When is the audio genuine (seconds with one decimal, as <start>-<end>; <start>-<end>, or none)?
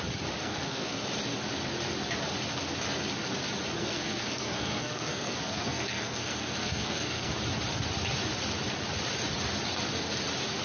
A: 0.0-0.4; 1.0-3.8; 7.3-10.6